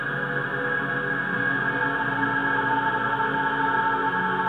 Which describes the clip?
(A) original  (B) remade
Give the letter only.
A